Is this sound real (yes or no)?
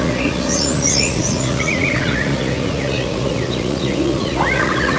no